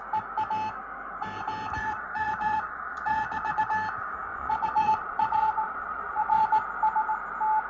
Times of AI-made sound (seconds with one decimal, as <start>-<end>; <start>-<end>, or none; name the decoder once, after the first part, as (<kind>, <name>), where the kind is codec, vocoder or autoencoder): 1.8-3.6 (vocoder, Vocos); 4.3-6.4